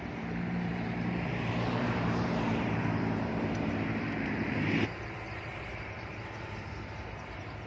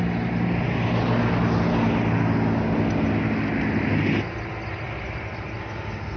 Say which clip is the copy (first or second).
first